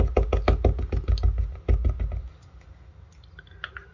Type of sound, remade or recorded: recorded